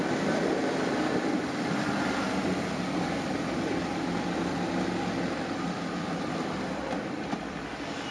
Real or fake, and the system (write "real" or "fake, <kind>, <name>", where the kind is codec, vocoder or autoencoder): real